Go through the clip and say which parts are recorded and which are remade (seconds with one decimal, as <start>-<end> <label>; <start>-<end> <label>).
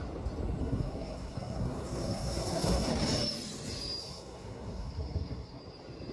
0.0-0.6 recorded; 0.6-2.9 remade; 2.9-4.0 recorded; 4.0-5.6 remade; 5.6-6.1 recorded